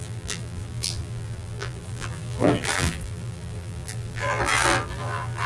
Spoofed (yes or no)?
yes